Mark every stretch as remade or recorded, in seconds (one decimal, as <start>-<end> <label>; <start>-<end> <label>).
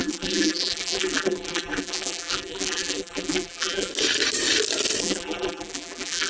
0.0-3.9 remade; 3.9-5.0 recorded; 5.0-6.3 remade